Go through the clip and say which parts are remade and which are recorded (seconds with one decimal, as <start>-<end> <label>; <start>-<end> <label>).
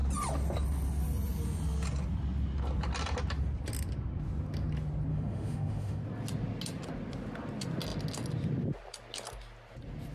0.0-5.1 recorded; 5.1-6.0 remade; 6.0-10.1 recorded